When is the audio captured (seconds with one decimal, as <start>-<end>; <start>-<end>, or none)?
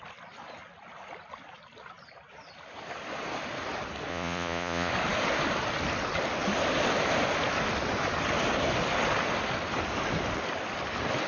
0.0-4.1; 4.9-11.3